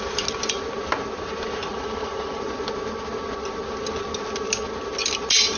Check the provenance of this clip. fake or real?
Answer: real